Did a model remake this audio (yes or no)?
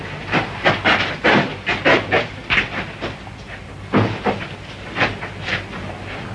no